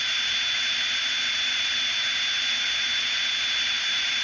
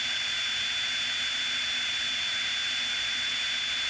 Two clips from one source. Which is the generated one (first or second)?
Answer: first